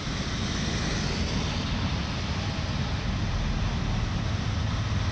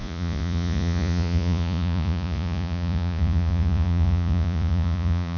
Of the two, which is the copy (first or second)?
second